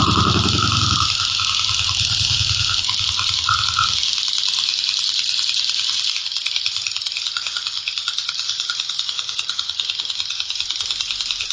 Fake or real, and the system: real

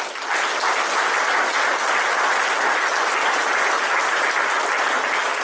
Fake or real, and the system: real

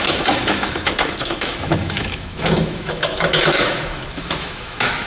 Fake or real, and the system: fake, autoencoder, DAC-VAE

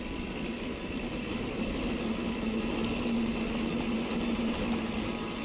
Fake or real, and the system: real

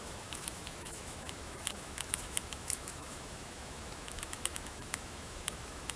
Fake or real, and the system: fake, autoencoder, DAC-VAE